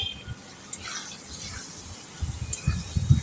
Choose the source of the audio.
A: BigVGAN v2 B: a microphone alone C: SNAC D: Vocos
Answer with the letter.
B